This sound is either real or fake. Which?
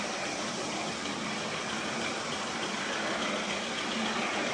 real